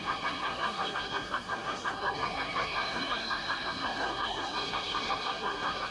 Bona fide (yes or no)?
no